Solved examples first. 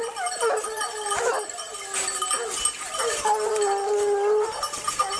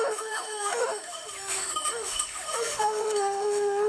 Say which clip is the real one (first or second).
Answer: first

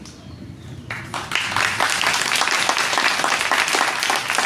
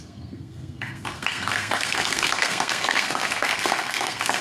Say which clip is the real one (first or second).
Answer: first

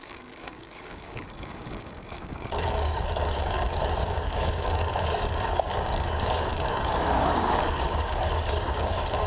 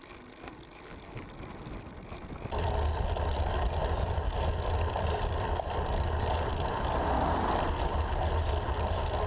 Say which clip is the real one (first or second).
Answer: second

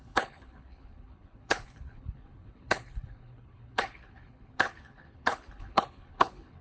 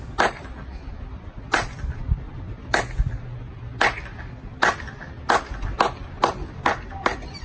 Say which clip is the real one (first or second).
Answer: second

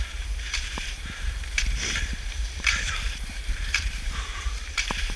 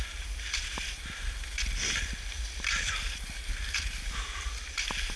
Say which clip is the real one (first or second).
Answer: second